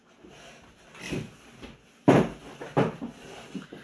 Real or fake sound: real